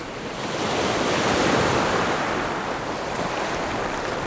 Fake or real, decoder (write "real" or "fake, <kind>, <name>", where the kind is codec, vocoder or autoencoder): fake, vocoder, BigVGAN v2